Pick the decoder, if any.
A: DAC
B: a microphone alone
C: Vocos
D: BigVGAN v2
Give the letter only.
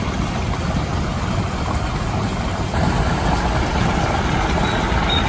B